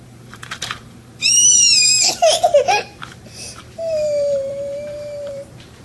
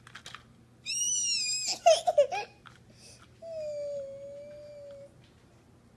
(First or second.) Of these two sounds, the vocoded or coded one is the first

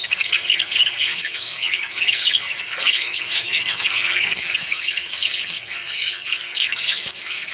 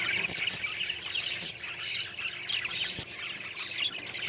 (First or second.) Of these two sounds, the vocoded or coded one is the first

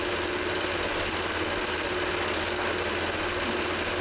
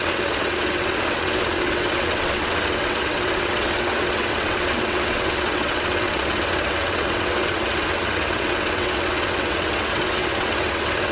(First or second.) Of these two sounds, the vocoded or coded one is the second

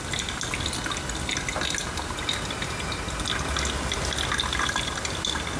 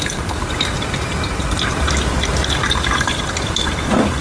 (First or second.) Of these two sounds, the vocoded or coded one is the second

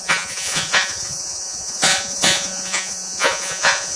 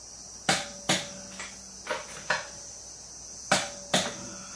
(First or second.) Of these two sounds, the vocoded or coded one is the first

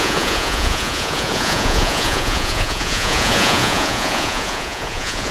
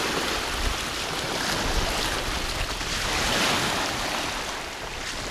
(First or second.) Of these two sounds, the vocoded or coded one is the first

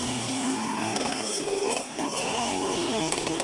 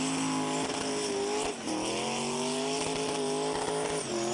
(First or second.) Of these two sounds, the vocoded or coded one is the first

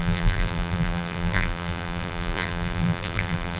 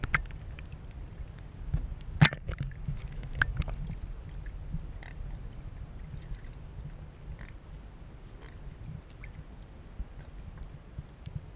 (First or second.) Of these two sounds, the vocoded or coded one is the first